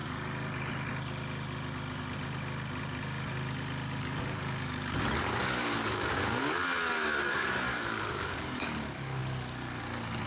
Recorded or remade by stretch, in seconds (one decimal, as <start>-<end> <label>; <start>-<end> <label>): 0.0-4.0 recorded; 4.0-10.3 remade